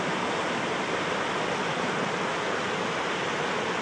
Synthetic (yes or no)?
no